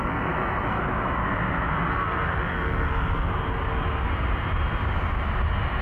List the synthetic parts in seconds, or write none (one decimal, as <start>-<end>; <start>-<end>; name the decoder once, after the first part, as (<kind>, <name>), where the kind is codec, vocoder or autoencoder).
0.0-0.8 (codec, SNAC); 1.9-3.3